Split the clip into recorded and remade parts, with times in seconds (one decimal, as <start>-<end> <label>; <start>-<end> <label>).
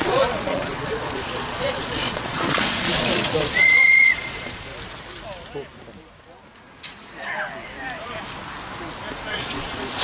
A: 0.0-4.7 remade; 4.7-9.3 recorded; 9.3-10.0 remade